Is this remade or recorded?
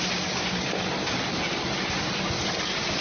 recorded